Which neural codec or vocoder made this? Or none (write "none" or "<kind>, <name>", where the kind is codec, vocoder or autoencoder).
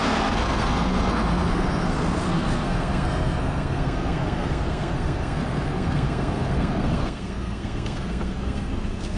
codec, SNAC